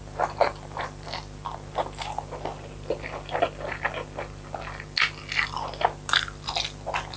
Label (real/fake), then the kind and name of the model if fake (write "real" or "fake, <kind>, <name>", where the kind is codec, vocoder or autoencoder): real